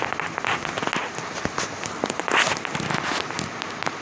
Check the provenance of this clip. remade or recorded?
recorded